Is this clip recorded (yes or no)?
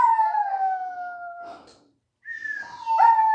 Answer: yes